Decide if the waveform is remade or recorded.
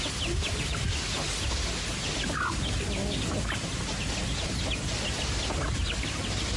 recorded